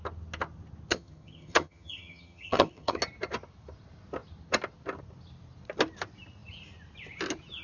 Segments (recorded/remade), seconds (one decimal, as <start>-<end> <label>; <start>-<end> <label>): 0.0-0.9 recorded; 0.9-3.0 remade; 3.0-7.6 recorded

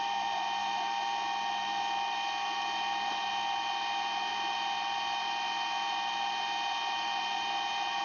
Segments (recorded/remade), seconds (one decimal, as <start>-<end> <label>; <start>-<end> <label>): 0.0-8.0 recorded

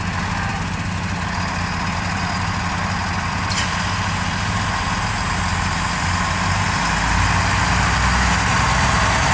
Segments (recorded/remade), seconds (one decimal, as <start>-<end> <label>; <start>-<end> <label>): 0.0-9.3 recorded